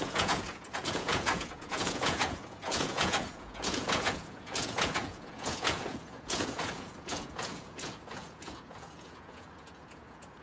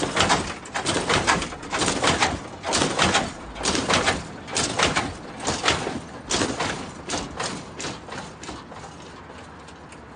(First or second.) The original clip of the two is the second